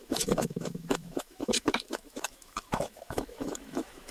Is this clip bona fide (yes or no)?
no